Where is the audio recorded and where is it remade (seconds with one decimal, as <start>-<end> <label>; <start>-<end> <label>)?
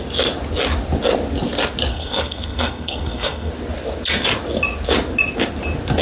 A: 0.0-1.9 recorded; 1.9-3.5 remade; 3.5-6.0 recorded